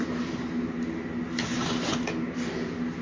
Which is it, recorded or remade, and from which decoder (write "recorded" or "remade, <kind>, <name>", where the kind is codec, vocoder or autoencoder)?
recorded